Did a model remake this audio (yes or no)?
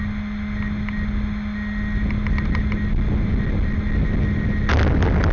no